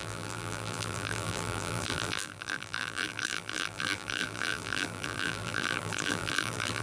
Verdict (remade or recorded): remade